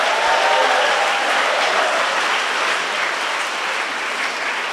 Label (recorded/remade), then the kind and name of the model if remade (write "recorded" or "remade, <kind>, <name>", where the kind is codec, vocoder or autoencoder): recorded